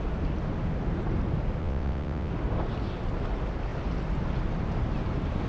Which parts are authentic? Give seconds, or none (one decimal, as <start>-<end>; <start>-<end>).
0.0-1.6; 2.3-5.5